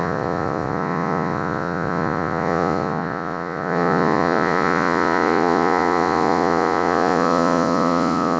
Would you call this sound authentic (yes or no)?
no